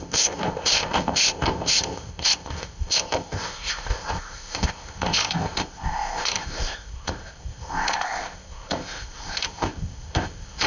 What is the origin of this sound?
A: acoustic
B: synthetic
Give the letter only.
B